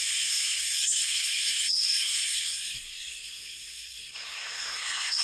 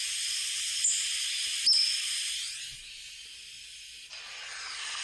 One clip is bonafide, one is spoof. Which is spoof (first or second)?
first